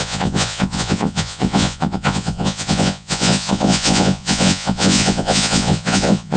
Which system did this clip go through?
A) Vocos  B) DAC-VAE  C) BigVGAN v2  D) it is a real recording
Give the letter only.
A